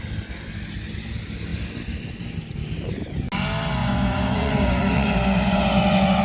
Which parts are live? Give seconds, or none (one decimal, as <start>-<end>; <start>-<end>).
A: 0.0-3.8